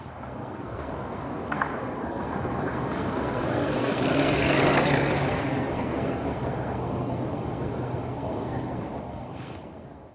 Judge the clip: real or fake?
fake